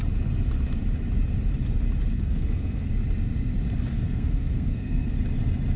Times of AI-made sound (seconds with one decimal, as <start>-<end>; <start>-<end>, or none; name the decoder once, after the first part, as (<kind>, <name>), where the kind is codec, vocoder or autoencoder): 2.1-2.9 (codec, SNAC); 3.9-5.1